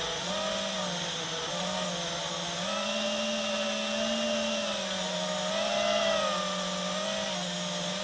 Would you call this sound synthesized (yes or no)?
no